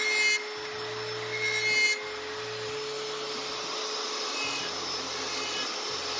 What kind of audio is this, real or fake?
real